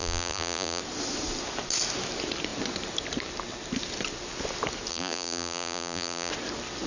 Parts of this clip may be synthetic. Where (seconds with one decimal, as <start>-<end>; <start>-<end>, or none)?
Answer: 0.0-0.8; 4.9-6.3